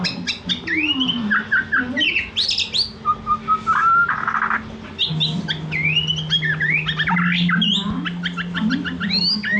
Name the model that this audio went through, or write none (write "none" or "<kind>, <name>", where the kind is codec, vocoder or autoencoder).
none